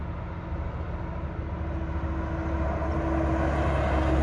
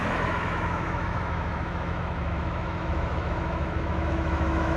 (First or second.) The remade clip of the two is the second